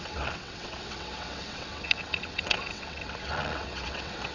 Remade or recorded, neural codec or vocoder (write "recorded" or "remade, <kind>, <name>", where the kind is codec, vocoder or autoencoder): remade, vocoder, WaveNeXt